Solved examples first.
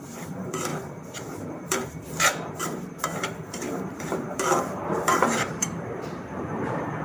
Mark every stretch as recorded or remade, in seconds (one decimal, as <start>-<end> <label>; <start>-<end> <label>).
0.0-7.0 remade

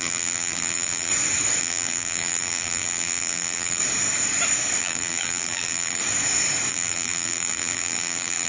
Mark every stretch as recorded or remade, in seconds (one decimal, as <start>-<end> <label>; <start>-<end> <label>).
0.0-1.1 remade; 1.1-1.6 recorded; 1.6-3.8 remade; 3.8-4.8 recorded; 4.8-6.0 remade; 6.0-6.7 recorded; 6.7-8.5 remade

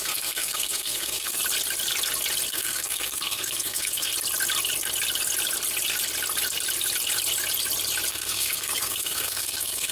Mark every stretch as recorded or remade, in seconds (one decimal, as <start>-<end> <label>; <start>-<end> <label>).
0.0-1.4 remade; 1.4-2.5 recorded; 2.5-4.1 remade; 4.1-8.1 recorded; 8.1-9.9 remade

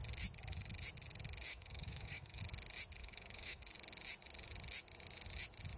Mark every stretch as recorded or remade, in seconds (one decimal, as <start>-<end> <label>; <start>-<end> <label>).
0.0-1.5 recorded; 1.5-2.4 remade; 2.4-3.0 recorded; 3.0-3.6 remade; 3.6-5.8 recorded

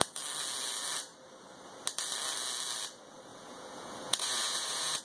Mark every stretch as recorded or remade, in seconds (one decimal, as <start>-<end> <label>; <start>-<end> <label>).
0.0-3.3 recorded; 3.3-5.0 remade

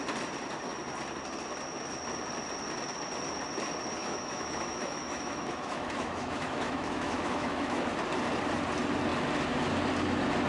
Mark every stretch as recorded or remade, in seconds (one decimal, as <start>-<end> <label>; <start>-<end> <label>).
0.0-4.0 recorded; 4.0-7.9 remade; 7.9-10.5 recorded

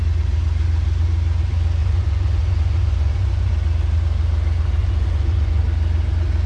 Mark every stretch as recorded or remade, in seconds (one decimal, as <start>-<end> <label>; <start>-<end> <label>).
0.0-1.8 recorded; 1.8-3.5 remade; 3.5-4.8 recorded; 4.8-5.6 remade; 5.6-6.5 recorded